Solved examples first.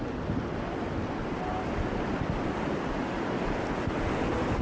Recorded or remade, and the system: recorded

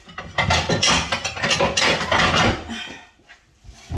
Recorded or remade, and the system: recorded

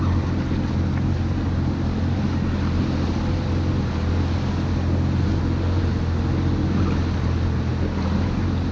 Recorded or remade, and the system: recorded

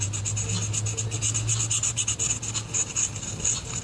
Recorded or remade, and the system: recorded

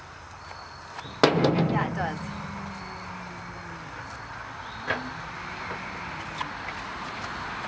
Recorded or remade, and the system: recorded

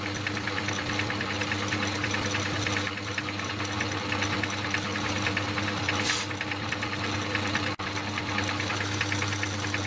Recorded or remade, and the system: recorded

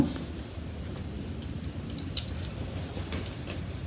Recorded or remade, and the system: recorded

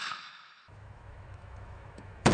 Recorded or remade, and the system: remade, autoencoder, DAC-VAE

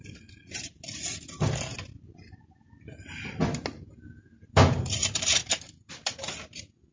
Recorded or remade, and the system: recorded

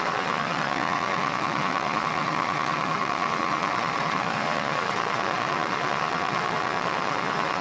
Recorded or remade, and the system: remade, vocoder, Vocos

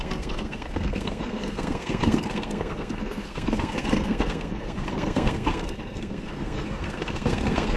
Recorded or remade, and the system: remade, codec, SNAC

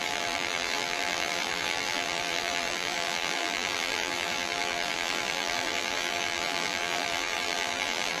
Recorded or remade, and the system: remade, vocoder, BigVGAN v2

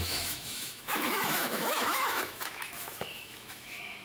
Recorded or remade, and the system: remade, autoencoder, DAC-VAE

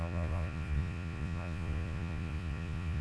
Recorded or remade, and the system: remade, vocoder, Vocos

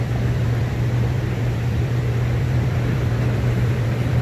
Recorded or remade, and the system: remade, vocoder, BigVGAN v2